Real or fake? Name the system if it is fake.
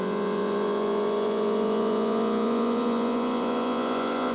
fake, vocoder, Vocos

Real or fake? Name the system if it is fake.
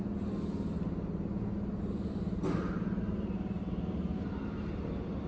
real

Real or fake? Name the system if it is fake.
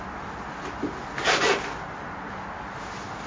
real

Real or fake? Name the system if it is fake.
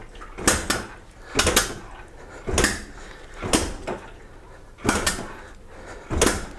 real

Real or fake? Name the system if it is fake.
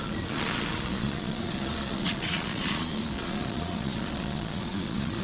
fake, vocoder, Vocos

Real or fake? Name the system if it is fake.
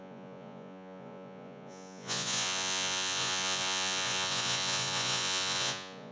fake, vocoder, Vocos